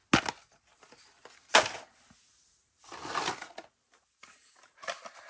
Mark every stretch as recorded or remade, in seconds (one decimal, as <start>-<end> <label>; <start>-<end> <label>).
0.0-5.3 recorded